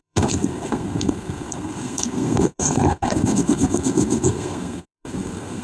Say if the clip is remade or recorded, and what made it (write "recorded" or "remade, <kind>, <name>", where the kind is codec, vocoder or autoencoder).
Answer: remade, codec, SNAC